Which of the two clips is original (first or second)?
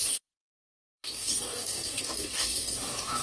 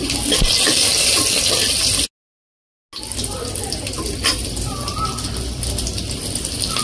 second